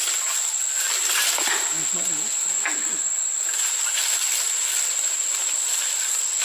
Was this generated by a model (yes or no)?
no